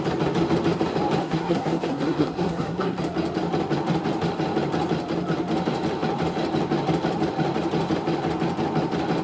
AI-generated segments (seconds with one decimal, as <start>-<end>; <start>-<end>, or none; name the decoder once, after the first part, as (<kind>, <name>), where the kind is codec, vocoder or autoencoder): 1.2-3.0 (codec, SNAC)